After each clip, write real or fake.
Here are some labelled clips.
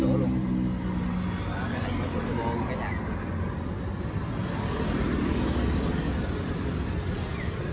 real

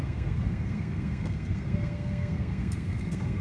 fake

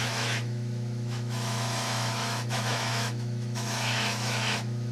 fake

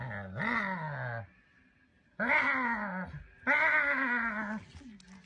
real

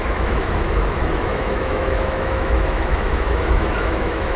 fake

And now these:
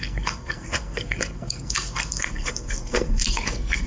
fake